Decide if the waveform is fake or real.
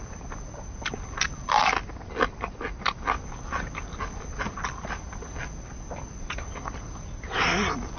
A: real